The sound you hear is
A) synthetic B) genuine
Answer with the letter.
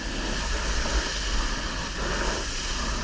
B